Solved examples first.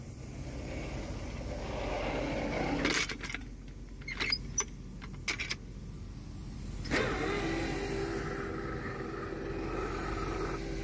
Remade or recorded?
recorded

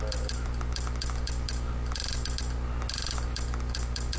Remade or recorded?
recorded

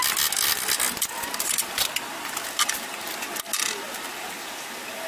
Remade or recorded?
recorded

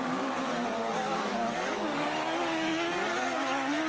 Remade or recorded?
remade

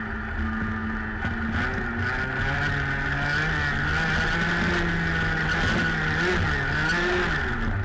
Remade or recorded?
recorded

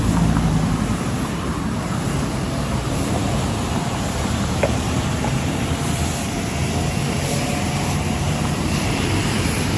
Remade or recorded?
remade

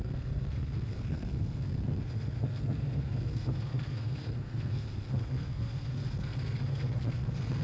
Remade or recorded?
remade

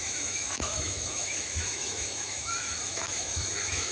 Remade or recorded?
remade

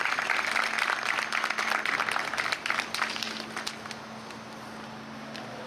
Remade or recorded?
recorded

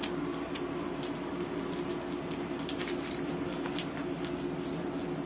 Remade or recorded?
recorded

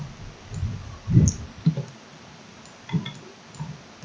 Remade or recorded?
recorded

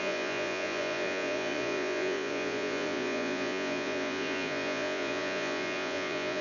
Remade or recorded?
remade